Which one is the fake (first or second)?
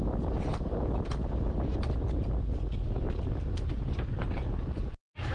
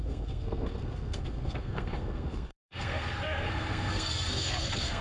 second